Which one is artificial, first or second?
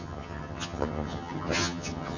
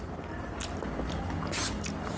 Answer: first